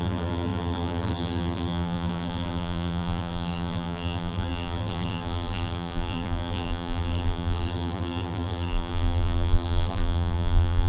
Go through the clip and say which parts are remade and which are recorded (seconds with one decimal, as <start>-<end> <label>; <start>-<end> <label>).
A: 0.0-10.9 remade

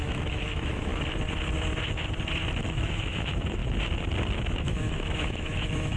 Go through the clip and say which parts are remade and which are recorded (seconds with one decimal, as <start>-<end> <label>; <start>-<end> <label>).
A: 0.0-0.9 remade; 0.9-2.6 recorded; 2.6-3.6 remade; 3.6-4.6 recorded; 4.6-6.0 remade

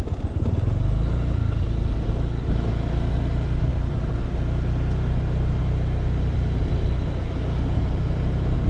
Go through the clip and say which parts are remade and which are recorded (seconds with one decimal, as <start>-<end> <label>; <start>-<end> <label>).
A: 0.0-8.7 recorded

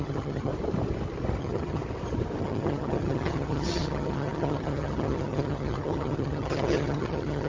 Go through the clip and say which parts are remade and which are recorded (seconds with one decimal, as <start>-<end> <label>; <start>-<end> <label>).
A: 0.0-0.5 remade; 0.5-1.4 recorded; 1.4-1.8 remade; 1.8-2.4 recorded; 2.4-7.5 remade

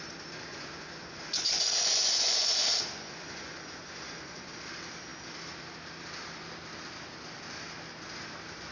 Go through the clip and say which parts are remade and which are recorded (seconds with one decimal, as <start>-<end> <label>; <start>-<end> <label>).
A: 0.0-0.5 recorded; 0.5-4.5 remade; 4.5-8.7 recorded

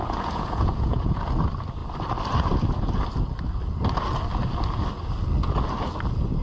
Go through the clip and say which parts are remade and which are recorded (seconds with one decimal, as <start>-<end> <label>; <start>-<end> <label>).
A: 0.0-1.2 remade; 1.2-6.4 recorded

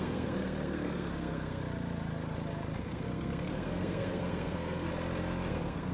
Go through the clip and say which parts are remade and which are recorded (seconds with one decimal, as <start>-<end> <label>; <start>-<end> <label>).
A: 0.0-1.6 remade; 1.6-2.8 recorded; 2.8-4.9 remade; 4.9-5.5 recorded; 5.5-5.9 remade